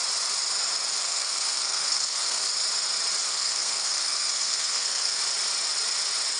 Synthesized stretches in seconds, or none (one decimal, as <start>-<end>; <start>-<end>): 1.0-2.4; 3.3-5.2